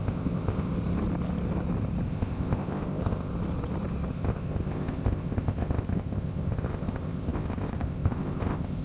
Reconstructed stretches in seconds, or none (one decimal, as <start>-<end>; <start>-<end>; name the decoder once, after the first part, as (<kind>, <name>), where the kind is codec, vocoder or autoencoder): 0.0-0.7 (codec, ZipCodec); 2.1-3.3; 4.1-8.8